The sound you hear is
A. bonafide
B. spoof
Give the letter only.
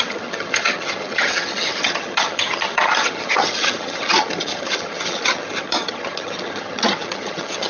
B